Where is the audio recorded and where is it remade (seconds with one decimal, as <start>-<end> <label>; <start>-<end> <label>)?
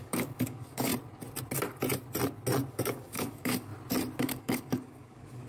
0.0-0.9 remade; 0.9-2.7 recorded; 2.7-3.7 remade; 3.7-4.2 recorded; 4.2-5.5 remade